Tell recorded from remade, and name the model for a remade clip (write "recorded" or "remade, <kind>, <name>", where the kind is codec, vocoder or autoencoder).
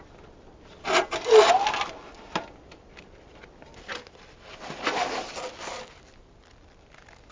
recorded